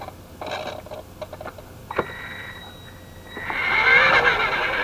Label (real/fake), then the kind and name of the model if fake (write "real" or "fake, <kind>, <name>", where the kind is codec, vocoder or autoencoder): real